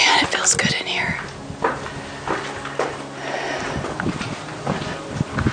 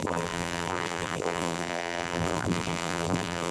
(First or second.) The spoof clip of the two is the second